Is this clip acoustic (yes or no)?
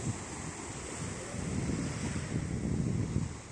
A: yes